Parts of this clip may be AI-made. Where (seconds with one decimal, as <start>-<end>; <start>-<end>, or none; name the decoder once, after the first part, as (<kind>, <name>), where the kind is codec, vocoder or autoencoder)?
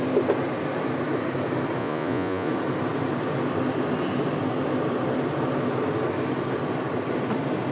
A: 1.8-2.5 (vocoder, Vocos)